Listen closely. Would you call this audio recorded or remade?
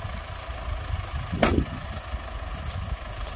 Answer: recorded